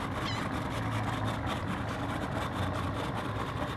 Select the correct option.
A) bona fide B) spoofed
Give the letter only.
A